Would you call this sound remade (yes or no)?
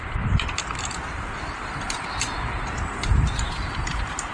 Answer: yes